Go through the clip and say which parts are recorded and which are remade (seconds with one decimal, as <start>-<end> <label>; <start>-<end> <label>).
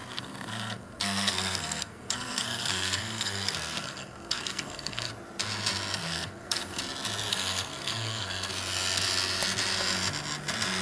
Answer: 0.0-5.1 remade; 5.1-6.0 recorded; 6.0-6.8 remade; 6.8-7.3 recorded; 7.3-8.5 remade; 8.5-10.8 recorded